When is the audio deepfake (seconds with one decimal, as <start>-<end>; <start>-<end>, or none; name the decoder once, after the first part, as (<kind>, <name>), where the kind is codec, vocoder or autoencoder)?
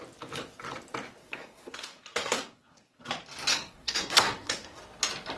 1.2-3.0 (codec, SNAC); 3.5-4.8